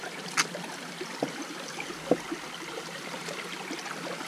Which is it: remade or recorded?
recorded